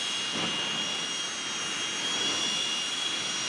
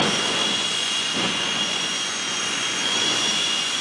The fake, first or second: second